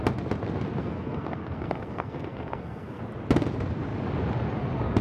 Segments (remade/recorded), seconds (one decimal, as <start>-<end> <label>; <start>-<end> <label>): 0.0-0.8 recorded; 0.8-3.0 remade; 3.0-5.0 recorded